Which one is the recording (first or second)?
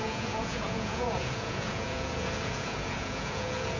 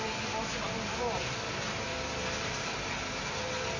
second